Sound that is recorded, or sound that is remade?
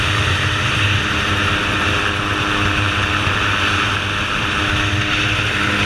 recorded